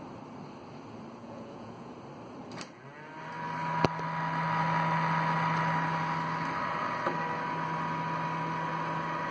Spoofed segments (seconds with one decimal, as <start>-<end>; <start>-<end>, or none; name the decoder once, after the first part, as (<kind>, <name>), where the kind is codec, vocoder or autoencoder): 1.2-1.9 (vocoder, Vocos)

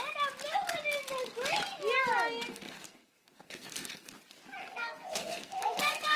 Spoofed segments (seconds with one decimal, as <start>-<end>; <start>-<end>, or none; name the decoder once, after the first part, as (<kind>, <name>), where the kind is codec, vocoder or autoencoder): 2.5-4.1 (codec, SNAC); 4.6-6.2

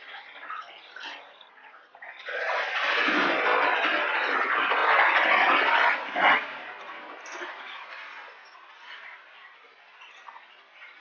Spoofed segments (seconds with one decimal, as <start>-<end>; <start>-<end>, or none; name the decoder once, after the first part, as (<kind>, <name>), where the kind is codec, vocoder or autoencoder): none

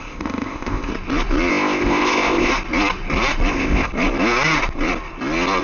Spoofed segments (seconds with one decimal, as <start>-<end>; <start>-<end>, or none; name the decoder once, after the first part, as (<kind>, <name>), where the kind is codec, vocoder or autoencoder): 0.0-0.9 (codec, ZipCodec); 1.5-2.5; 3.5-3.9